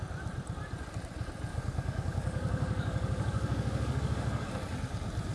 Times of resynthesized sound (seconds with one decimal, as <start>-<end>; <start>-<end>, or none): 1.5-4.5